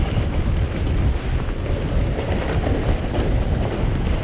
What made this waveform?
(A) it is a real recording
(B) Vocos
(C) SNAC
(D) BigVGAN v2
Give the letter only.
A